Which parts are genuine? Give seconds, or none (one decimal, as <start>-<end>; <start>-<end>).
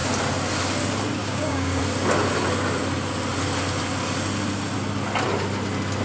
0.0-1.2; 1.8-6.0